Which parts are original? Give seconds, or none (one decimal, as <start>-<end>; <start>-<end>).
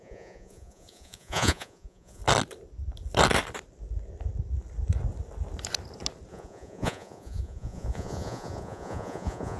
2.2-6.3